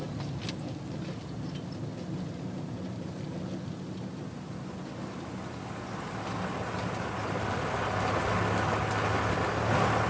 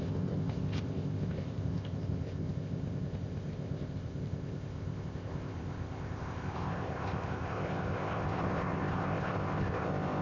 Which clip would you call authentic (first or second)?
first